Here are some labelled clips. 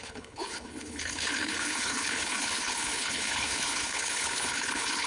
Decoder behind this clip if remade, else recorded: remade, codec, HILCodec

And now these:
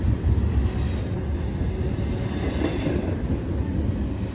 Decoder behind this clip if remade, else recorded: recorded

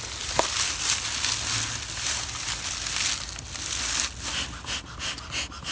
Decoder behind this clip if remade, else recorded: recorded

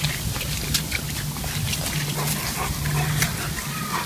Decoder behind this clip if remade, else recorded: recorded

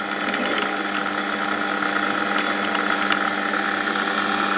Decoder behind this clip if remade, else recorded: recorded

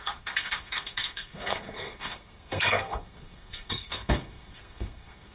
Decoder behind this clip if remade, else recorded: remade, codec, SNAC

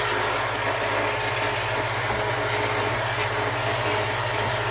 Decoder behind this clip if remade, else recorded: recorded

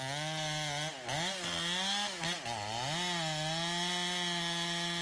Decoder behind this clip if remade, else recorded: recorded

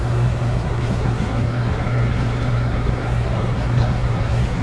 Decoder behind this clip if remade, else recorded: remade, codec, SNAC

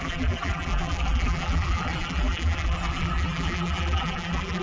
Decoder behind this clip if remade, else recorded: remade, vocoder, BigVGAN v2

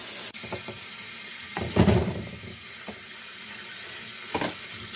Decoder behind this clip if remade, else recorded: recorded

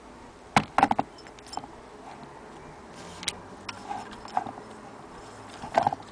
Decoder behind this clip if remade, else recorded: recorded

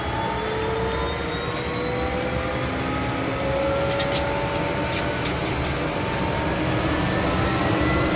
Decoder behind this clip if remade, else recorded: recorded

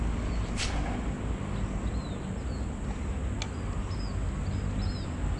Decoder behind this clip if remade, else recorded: recorded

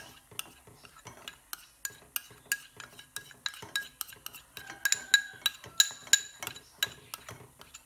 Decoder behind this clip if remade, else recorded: recorded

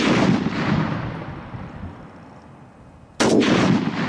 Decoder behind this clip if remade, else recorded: recorded